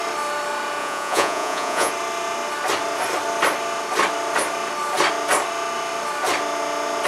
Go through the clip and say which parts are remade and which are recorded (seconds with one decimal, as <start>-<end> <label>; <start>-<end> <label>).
0.0-0.8 recorded; 0.8-1.9 remade; 1.9-7.1 recorded